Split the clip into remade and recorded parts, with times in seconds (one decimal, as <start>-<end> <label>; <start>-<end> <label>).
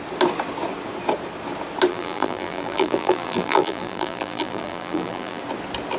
0.0-1.9 recorded; 1.9-5.4 remade; 5.4-6.0 recorded